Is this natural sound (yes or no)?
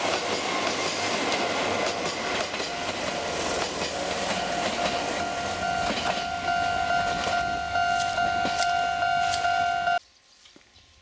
yes